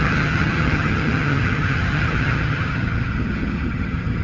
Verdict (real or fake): fake